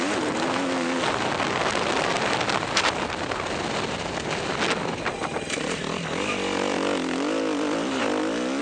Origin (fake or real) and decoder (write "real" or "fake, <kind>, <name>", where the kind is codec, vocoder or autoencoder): real